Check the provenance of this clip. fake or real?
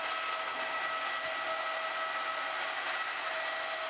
real